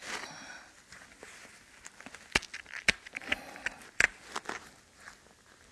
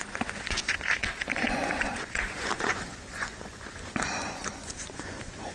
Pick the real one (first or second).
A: first